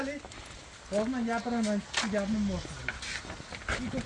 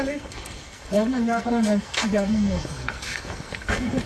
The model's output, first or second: second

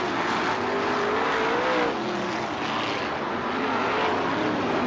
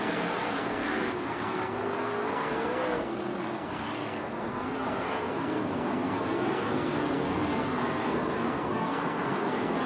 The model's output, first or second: second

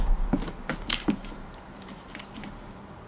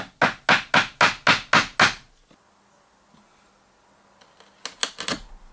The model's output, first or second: first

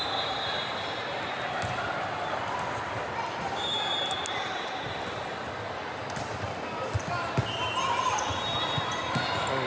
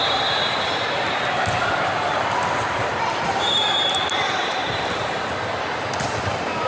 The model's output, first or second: second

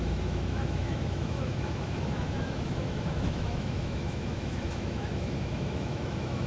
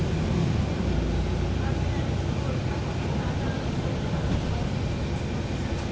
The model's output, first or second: first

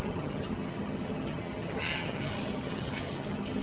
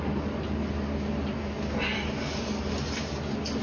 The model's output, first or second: first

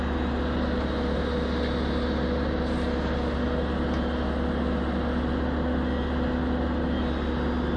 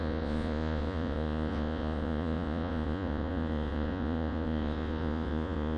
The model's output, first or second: second